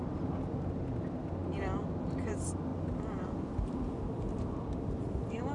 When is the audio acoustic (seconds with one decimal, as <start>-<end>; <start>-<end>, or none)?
0.0-5.5